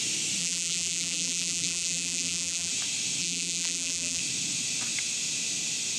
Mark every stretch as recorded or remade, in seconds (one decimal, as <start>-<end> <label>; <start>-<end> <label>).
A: 0.0-0.4 recorded; 0.4-2.7 remade; 2.7-3.2 recorded; 3.2-4.2 remade; 4.2-6.0 recorded